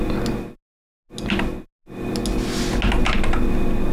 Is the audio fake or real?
real